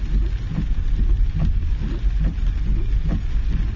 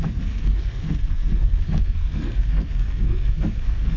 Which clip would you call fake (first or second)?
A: second